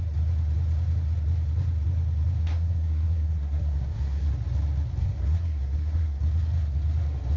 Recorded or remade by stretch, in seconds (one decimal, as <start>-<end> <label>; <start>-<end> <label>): 0.0-2.4 recorded; 2.4-4.3 remade; 4.3-5.0 recorded; 5.0-6.2 remade; 6.2-7.4 recorded